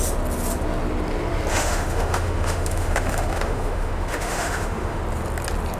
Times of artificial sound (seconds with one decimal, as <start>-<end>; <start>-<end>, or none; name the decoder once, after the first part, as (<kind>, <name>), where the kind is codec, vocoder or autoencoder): 1.5-5.0 (autoencoder, DAC-VAE)